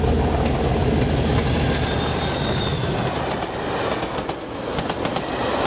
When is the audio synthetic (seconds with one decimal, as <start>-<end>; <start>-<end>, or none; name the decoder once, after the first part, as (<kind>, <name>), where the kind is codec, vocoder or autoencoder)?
2.8-3.7 (vocoder, BigVGAN v2)